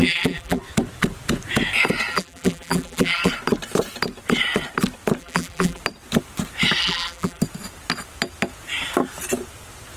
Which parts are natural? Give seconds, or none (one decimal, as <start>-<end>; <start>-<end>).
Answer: 0.6-2.1; 3.3-5.2; 5.8-6.8; 7.4-10.0